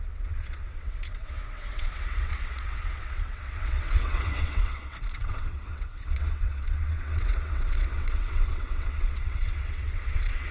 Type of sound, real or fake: fake